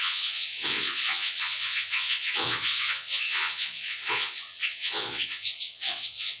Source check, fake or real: fake